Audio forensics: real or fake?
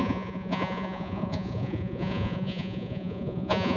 fake